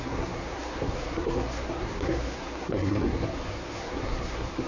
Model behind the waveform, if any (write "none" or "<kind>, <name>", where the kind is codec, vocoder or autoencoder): codec, SNAC